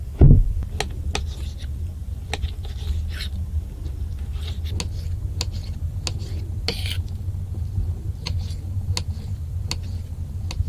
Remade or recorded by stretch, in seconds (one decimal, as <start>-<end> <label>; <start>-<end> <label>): 0.0-10.7 recorded